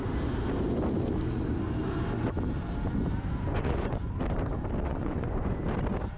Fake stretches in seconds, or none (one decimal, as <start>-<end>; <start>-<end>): 3.5-4.1; 4.9-5.6